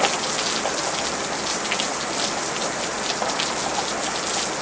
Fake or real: real